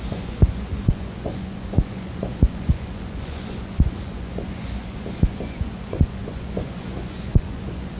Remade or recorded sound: remade